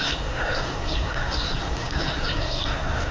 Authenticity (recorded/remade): remade